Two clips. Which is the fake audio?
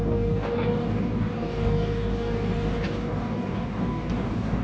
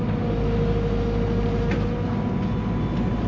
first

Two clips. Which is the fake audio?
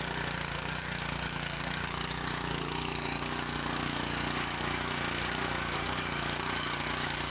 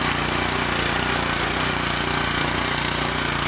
first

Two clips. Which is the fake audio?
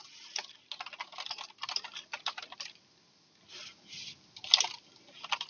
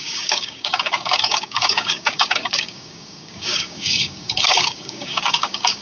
second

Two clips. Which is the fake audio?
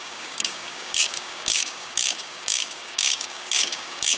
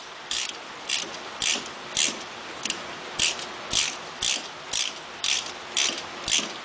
first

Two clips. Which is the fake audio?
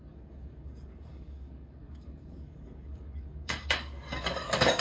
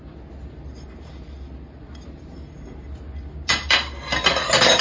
first